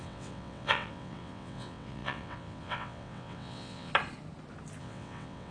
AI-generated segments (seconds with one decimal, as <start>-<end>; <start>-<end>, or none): 0.0-3.9; 4.8-5.5